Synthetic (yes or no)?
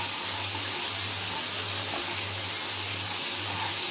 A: no